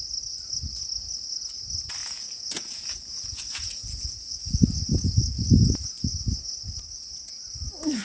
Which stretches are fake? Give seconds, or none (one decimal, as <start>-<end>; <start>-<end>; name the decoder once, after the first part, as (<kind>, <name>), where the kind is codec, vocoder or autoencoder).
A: 2.0-4.6 (vocoder, Vocos)